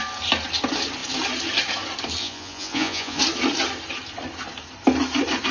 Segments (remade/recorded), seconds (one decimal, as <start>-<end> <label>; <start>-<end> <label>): 0.0-2.2 recorded; 2.2-3.2 remade; 3.2-5.5 recorded